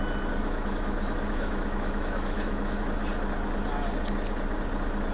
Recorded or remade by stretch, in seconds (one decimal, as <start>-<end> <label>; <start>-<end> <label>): 0.0-0.4 recorded; 0.4-2.8 remade; 2.8-5.1 recorded

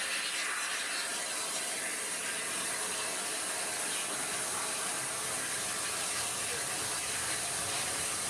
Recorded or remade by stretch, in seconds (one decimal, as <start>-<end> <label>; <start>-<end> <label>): 0.0-8.3 recorded

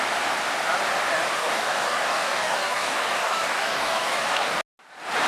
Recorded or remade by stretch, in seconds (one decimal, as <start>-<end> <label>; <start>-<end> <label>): 0.0-1.4 recorded; 1.4-4.6 remade; 4.6-5.3 recorded

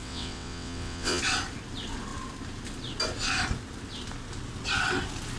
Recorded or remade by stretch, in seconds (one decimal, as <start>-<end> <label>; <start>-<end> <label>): 0.0-1.2 remade; 1.2-5.4 recorded

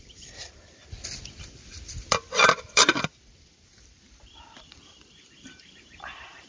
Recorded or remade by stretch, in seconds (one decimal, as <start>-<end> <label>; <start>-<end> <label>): 0.0-0.8 remade; 0.8-2.1 recorded; 2.1-6.5 remade

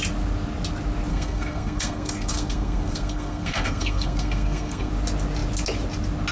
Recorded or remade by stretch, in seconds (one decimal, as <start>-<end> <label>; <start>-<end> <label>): 0.0-1.1 recorded; 1.1-4.9 remade; 4.9-6.3 recorded

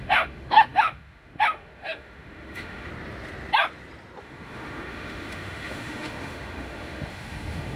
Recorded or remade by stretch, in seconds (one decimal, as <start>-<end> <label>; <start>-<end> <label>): 0.0-2.9 remade; 2.9-4.2 recorded; 4.2-7.8 remade